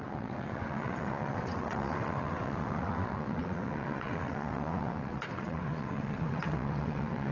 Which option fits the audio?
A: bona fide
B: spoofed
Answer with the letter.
B